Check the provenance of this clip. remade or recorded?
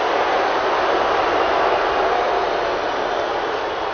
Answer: recorded